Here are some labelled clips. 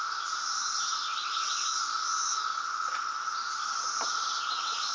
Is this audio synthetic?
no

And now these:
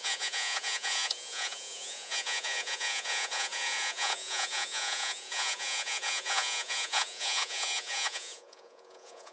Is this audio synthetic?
yes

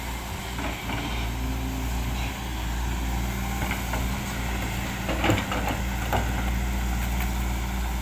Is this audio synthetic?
no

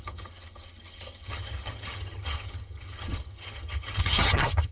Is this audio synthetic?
yes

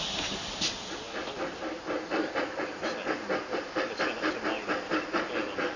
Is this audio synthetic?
no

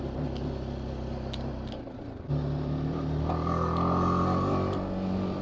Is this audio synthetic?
no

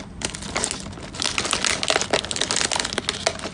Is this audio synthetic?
no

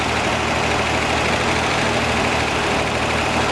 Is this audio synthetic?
no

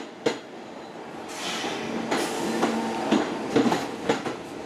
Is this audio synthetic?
no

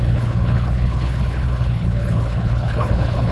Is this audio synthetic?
yes